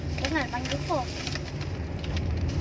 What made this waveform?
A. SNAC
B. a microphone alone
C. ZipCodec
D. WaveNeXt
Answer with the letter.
B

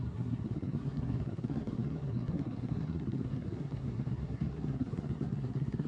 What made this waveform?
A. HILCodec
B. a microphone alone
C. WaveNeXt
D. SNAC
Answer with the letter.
D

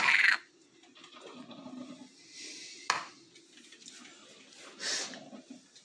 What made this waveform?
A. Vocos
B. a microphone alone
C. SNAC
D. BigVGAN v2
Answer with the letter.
B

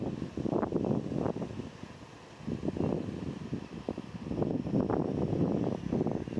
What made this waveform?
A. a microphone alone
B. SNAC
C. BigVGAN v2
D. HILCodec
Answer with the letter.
A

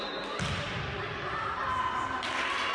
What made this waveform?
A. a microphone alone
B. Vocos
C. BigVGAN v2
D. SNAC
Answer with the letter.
A